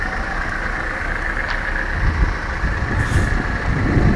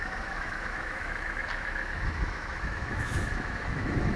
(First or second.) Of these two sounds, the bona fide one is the first